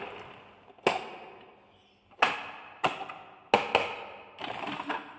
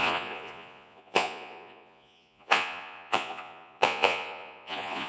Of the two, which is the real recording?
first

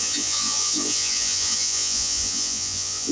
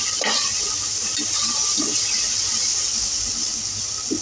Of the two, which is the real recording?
second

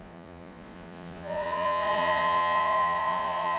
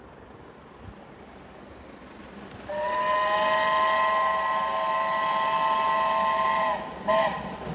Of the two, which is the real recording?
second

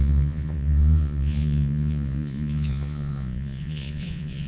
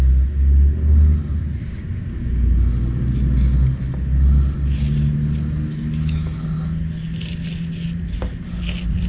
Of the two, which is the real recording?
second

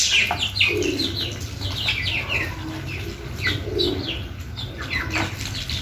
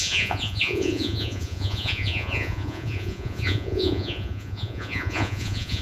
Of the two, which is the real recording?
first